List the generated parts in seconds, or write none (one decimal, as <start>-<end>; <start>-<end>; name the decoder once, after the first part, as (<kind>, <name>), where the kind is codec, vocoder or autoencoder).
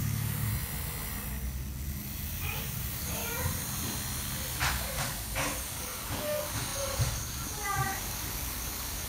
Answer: 0.0-0.5 (codec, DAC); 2.6-3.2; 4.7-9.1